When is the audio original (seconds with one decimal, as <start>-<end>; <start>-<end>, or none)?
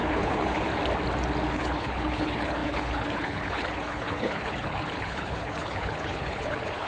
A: 0.7-1.5